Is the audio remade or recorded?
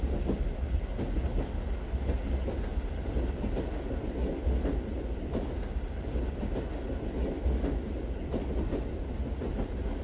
recorded